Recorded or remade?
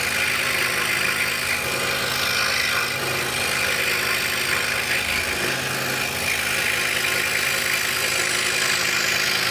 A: recorded